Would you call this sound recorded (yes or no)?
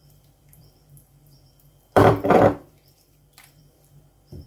no